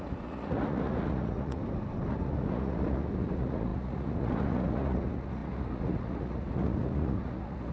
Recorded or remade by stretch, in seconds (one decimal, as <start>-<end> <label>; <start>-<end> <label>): 0.0-1.6 remade; 1.6-2.1 recorded; 2.1-7.7 remade

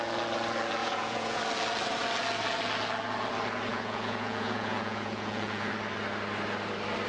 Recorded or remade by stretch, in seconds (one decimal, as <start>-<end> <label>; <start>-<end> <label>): 0.0-0.8 recorded; 0.8-1.4 remade; 1.4-3.7 recorded; 3.7-5.7 remade; 5.7-7.1 recorded